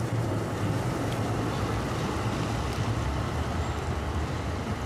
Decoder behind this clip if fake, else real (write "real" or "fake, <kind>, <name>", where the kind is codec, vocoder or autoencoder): real